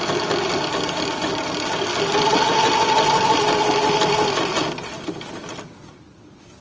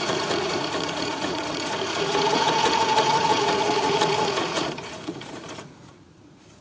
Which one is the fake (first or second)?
second